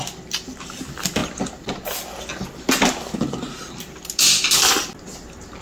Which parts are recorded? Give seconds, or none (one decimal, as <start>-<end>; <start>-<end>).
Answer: 0.0-5.6

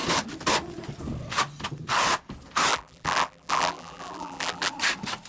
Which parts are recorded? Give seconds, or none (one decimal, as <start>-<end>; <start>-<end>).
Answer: 0.0-2.7; 4.7-5.3

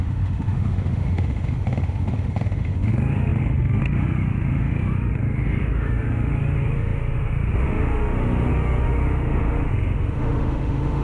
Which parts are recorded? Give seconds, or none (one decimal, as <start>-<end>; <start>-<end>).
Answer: none